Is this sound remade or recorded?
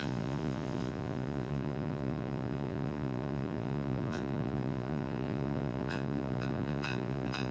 remade